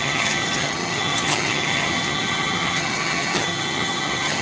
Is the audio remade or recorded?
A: remade